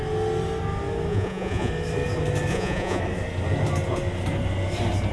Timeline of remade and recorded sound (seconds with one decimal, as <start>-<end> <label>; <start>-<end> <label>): 0.0-1.1 recorded; 1.1-1.7 remade; 1.7-2.5 recorded; 2.5-3.0 remade; 3.0-5.1 recorded